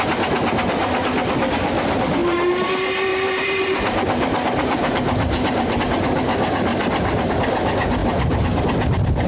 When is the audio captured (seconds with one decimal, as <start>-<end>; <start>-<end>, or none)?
0.0-3.1; 5.8-8.0; 8.6-9.3